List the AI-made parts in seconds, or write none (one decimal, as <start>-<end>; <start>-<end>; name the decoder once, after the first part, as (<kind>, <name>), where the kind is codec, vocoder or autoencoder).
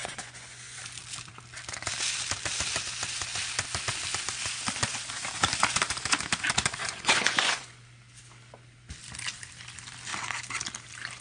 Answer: 0.0-0.8 (vocoder, Vocos); 6.8-7.8